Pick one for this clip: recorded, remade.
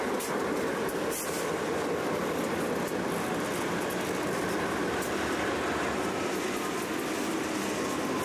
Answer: recorded